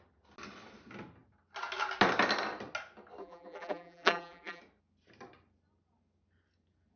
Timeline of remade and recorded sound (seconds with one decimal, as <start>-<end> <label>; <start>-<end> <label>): 0.0-3.2 recorded; 3.2-4.6 remade; 4.6-7.0 recorded